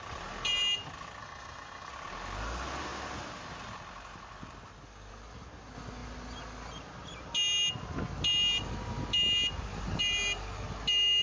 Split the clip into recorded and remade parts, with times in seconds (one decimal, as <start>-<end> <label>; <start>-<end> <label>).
0.0-1.2 recorded; 1.2-1.9 remade; 1.9-11.2 recorded